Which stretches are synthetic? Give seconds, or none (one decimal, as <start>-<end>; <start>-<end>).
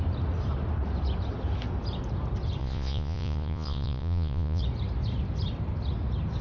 2.6-4.6